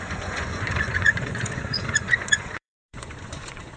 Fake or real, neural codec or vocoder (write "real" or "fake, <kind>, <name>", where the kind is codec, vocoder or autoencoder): fake, vocoder, Vocos